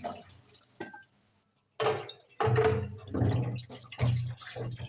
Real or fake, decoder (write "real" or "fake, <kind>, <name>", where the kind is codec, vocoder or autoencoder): real